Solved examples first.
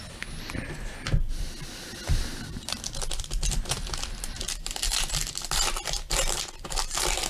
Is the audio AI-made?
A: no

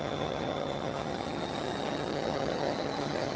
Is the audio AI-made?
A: yes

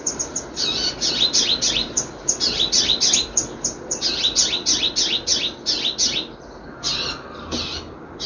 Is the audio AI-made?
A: no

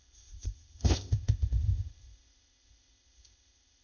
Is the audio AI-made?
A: yes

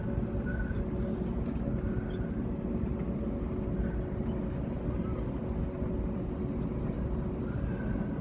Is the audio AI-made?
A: no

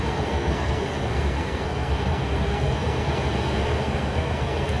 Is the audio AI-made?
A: yes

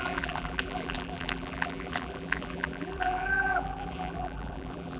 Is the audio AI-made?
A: yes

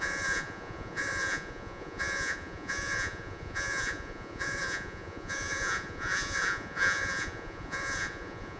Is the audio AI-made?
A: yes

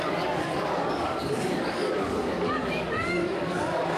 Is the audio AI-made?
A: yes